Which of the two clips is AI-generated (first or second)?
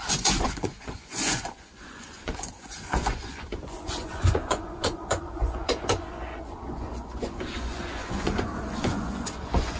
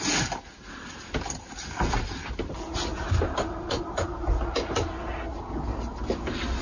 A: first